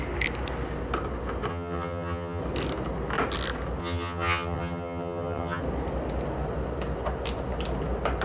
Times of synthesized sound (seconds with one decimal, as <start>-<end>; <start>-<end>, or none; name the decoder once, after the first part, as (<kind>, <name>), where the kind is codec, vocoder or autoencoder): 1.5-2.4 (vocoder, HiFi-GAN); 3.8-5.6